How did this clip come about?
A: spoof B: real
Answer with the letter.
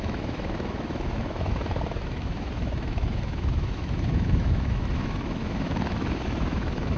A